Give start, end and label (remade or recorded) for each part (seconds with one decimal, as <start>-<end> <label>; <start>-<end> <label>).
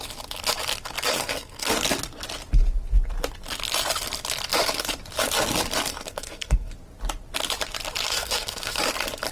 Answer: 0.0-1.1 recorded; 1.1-1.7 remade; 1.7-5.9 recorded; 5.9-6.7 remade; 6.7-8.1 recorded; 8.1-8.8 remade; 8.8-9.3 recorded